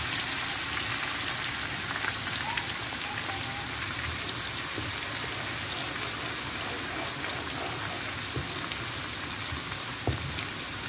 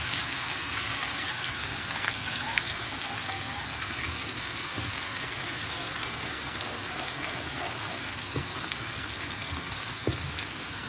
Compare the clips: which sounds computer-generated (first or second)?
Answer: second